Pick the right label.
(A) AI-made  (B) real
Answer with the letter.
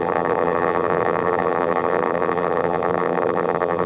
A